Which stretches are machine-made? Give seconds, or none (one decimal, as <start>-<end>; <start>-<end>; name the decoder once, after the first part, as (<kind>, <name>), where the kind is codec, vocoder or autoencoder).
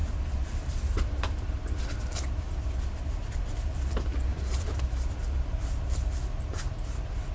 0.0-7.3 (vocoder, BigVGAN v2)